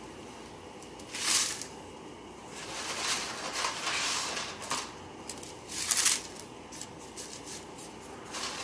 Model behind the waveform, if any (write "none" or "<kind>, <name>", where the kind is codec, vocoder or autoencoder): none